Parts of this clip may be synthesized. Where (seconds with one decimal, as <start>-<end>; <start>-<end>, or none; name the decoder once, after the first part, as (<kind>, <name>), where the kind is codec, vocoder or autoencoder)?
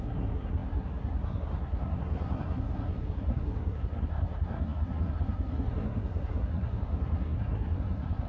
0.0-8.3 (codec, SNAC)